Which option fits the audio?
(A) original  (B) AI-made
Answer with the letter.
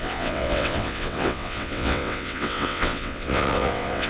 B